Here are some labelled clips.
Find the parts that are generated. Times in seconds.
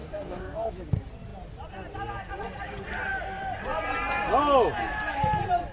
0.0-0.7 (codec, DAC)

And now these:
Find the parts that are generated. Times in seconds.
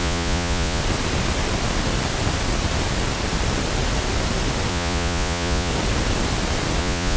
0.0-0.8 (vocoder, Vocos); 4.7-5.7; 6.8-7.2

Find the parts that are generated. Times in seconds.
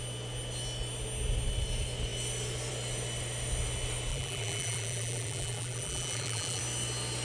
4.1-6.6 (vocoder, BigVGAN v2)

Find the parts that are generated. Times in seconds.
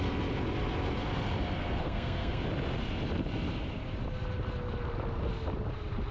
1.8-2.4 (codec, SNAC)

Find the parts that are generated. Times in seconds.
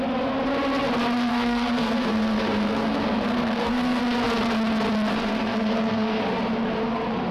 1.3-4.0 (codec, SNAC); 5.1-6.2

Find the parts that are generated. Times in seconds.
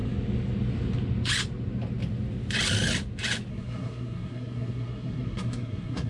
3.5-6.1 (codec, SNAC)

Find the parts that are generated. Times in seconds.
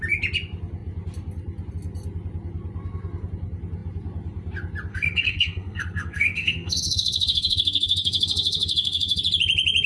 4.9-9.2 (codec, SNAC)